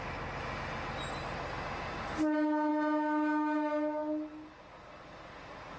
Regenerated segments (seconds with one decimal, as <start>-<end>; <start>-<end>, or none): none